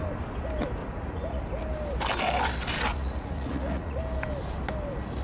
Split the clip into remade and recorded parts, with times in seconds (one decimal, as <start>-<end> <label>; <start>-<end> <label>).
0.0-0.8 recorded; 0.8-1.4 remade; 1.4-2.9 recorded; 2.9-4.0 remade; 4.0-5.2 recorded